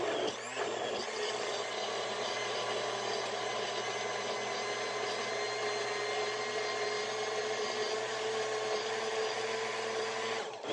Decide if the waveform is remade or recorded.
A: recorded